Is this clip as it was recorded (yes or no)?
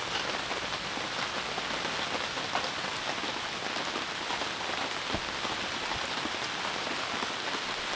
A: yes